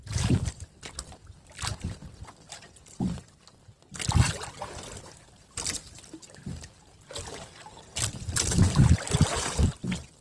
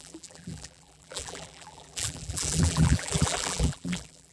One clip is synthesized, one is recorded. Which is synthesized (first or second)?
second